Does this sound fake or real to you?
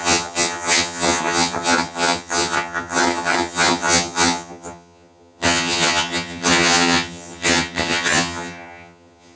fake